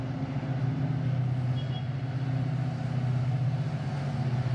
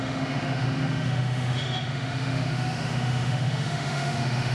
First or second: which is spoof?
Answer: second